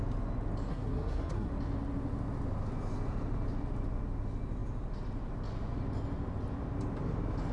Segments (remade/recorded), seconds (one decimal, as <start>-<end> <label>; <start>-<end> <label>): 0.0-0.7 recorded; 0.7-1.5 remade; 1.5-7.5 recorded